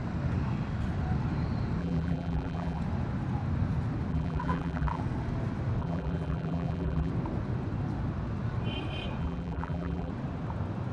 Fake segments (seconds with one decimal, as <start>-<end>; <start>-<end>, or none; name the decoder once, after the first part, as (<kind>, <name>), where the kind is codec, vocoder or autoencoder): 1.8-2.8 (vocoder, BigVGAN v2); 4.1-5.0; 5.8-7.1; 9.2-10.1